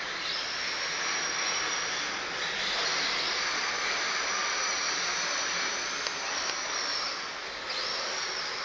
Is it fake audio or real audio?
real